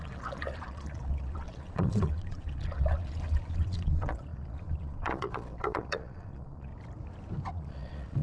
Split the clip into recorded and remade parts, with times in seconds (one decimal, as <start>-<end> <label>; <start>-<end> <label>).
0.0-6.7 remade; 6.7-7.5 recorded; 7.5-8.2 remade